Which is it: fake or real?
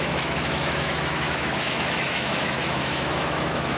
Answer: fake